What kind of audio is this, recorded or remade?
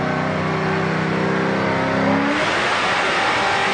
recorded